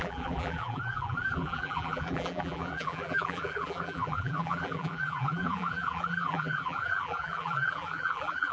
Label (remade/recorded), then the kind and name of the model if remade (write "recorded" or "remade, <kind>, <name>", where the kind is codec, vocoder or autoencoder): remade, vocoder, BigVGAN v2